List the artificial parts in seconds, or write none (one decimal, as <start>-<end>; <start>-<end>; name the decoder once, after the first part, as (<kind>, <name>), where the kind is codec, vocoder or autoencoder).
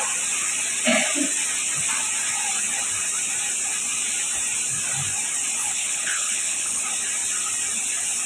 5.6-6.8 (codec, HILCodec)